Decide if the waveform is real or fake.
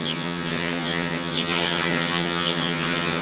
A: fake